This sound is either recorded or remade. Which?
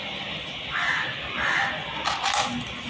recorded